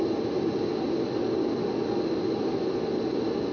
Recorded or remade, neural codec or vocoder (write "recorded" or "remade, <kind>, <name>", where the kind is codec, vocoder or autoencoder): recorded